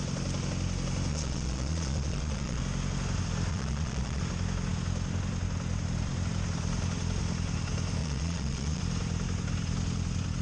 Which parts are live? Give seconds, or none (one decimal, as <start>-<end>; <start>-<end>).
0.0-1.1; 2.6-3.5; 4.2-8.0; 8.8-10.4